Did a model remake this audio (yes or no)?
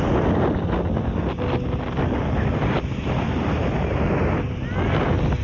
no